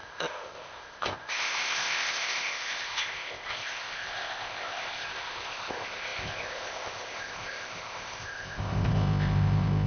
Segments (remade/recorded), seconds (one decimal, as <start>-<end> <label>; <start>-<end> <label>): 0.0-9.9 remade